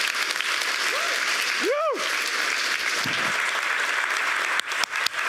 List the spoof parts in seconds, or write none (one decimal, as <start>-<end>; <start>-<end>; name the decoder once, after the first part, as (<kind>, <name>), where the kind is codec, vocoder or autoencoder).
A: 2.3-5.3 (vocoder, BigVGAN v2)